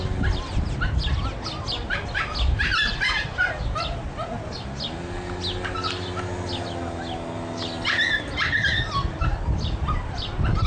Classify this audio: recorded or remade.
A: recorded